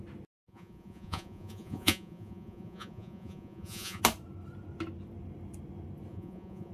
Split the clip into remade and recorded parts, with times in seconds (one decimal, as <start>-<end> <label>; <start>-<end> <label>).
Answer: 0.0-0.4 recorded; 0.4-4.0 remade; 4.0-6.1 recorded; 6.1-6.7 remade